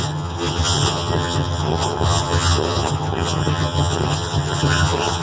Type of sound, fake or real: fake